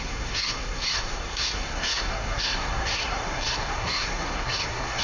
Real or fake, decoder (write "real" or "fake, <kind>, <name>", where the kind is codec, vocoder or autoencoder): fake, codec, SNAC